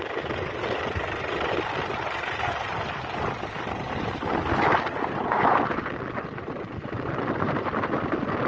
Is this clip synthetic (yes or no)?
no